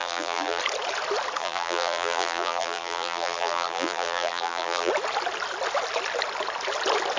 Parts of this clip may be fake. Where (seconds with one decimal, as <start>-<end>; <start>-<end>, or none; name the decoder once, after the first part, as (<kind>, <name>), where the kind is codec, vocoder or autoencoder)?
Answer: 0.0-0.6 (vocoder, BigVGAN v2); 1.4-4.9

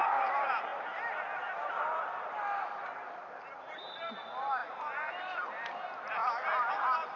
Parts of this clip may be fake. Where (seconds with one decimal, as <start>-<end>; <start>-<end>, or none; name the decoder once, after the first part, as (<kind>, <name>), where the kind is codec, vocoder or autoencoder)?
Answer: 0.0-0.7 (vocoder, BigVGAN v2); 1.7-6.2; 6.8-7.2

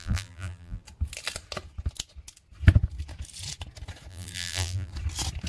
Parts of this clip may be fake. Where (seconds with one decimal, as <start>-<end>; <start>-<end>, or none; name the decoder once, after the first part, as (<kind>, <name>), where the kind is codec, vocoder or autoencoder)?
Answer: 0.0-0.8 (vocoder, BigVGAN v2); 4.1-4.9